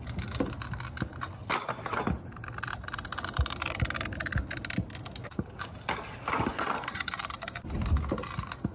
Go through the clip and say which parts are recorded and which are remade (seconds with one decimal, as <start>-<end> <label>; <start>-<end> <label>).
0.0-6.5 recorded; 6.5-7.2 remade; 7.2-8.7 recorded